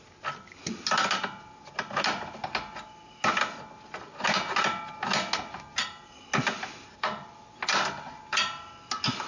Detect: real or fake real